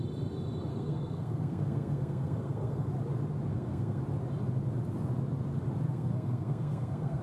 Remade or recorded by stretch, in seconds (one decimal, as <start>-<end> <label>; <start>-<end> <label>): 0.0-0.7 recorded; 0.7-2.9 remade; 2.9-3.5 recorded; 3.5-4.0 remade; 4.0-5.9 recorded; 5.9-7.2 remade